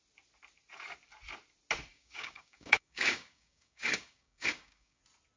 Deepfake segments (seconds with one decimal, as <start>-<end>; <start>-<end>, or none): 1.9-5.0